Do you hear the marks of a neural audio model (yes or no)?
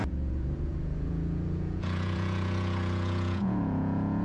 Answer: yes